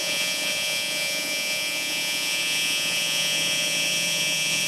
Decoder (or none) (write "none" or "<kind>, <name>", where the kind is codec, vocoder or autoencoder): vocoder, Vocos